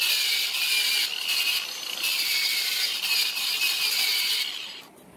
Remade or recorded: recorded